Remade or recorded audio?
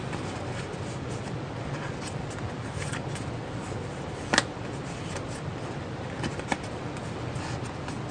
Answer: recorded